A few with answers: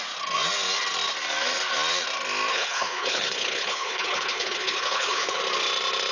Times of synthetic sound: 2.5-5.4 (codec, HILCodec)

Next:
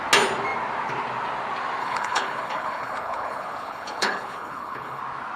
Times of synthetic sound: 1.8-5.0 (codec, HILCodec)

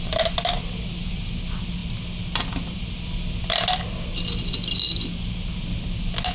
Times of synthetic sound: none

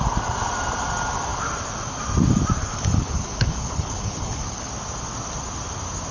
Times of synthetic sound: 2.6-4.7 (codec, HILCodec)

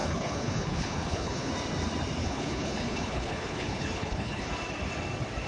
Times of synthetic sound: 0.0-1.5 (codec, HILCodec); 2.2-4.5